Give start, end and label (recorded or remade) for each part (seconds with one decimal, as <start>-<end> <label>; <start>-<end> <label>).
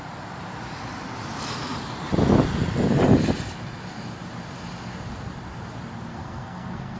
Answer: 0.0-6.1 recorded; 6.1-7.0 remade